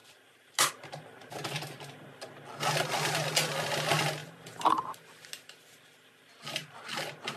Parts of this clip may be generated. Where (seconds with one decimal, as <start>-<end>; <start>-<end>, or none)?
4.2-5.0

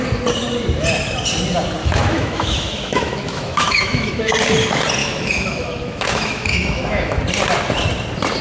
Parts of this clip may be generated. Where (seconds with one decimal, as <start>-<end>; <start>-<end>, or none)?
1.8-4.3; 5.0-7.2

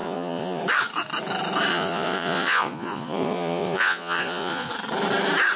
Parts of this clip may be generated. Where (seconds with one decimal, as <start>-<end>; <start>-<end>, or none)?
0.0-0.6; 1.7-4.7

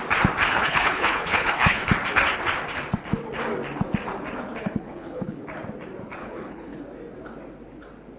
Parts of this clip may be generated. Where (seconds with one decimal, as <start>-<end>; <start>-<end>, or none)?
0.5-1.9; 4.6-5.4; 6.2-6.8

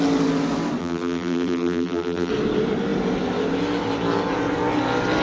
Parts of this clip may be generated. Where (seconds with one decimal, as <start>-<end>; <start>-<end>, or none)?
0.8-2.3